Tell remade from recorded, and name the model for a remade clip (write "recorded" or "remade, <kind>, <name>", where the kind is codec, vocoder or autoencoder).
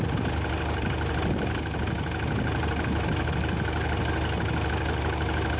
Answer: recorded